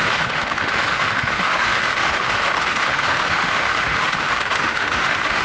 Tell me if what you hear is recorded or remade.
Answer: remade